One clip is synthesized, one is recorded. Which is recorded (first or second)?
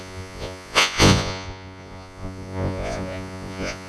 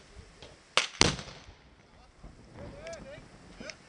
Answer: second